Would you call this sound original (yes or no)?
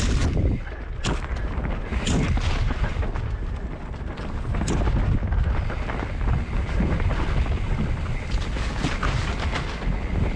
yes